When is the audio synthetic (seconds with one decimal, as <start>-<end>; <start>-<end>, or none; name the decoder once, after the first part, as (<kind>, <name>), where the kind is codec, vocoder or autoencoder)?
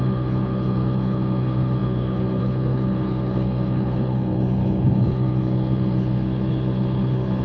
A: 0.0-7.4 (codec, HILCodec)